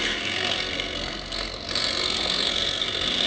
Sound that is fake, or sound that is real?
fake